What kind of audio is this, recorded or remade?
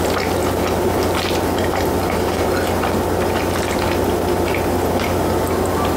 recorded